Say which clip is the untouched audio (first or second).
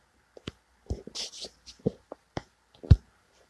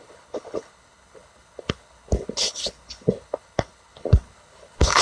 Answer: first